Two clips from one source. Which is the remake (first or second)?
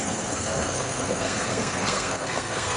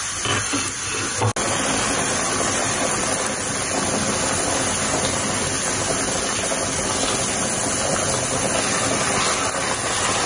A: first